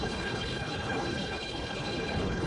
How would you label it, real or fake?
fake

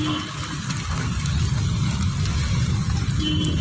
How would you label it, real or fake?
real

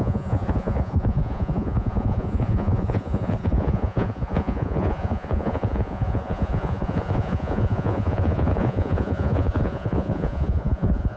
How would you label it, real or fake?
fake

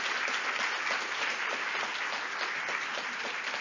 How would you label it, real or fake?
real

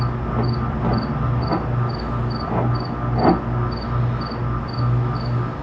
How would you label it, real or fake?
real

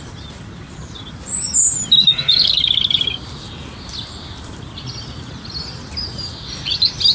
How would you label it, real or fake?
fake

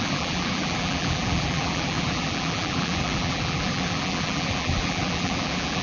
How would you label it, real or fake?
fake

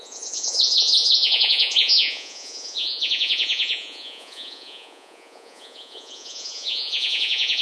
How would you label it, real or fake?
fake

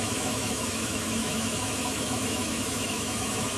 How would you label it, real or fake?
fake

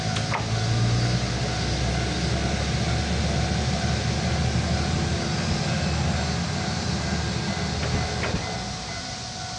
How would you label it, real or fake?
real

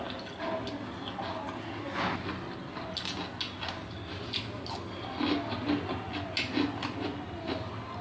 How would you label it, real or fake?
real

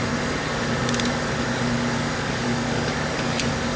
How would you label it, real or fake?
fake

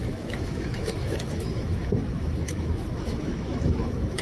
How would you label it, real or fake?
fake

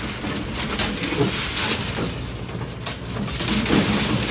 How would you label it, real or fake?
real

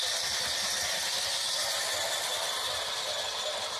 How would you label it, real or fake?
real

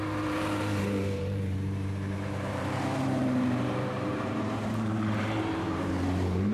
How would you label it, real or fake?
fake